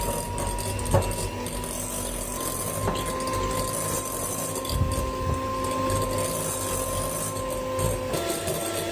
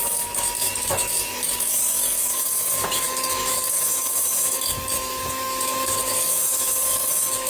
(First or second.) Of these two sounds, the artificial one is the second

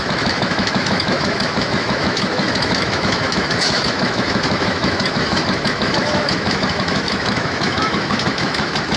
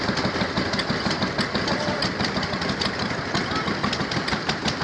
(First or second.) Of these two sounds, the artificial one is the first